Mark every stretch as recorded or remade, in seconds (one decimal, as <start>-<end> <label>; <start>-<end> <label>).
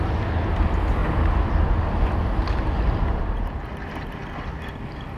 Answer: 0.0-5.2 recorded